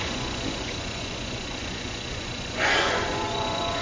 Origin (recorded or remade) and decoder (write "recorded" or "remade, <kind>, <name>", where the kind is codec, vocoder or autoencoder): remade, vocoder, Vocos